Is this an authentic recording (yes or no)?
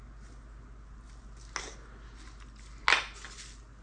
yes